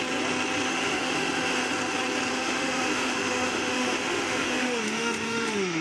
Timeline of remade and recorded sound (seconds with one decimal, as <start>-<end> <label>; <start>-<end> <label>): 0.0-0.7 recorded; 0.7-1.7 remade; 1.7-2.3 recorded; 2.3-5.8 remade